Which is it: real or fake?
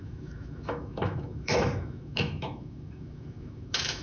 fake